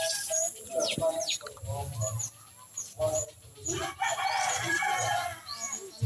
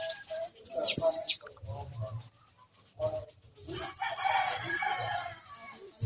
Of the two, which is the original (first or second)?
first